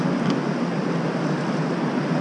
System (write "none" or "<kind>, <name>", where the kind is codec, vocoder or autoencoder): none